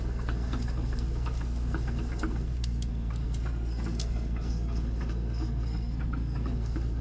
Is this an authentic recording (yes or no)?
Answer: no